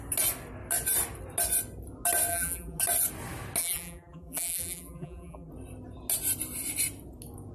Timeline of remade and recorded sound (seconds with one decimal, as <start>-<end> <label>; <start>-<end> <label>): 0.0-2.3 recorded; 2.3-2.8 remade; 2.8-3.6 recorded; 3.6-5.5 remade; 5.5-7.5 recorded